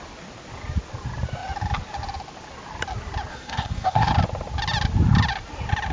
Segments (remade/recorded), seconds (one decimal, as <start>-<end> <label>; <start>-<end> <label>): 0.0-3.3 recorded; 3.3-4.1 remade; 4.1-5.9 recorded